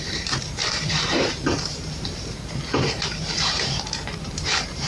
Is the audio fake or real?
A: fake